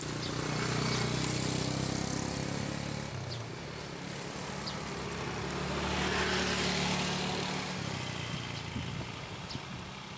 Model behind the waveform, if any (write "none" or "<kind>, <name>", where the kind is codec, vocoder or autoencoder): none